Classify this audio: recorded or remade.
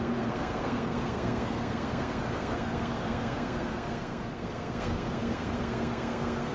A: remade